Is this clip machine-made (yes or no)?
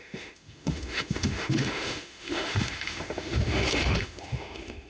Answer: yes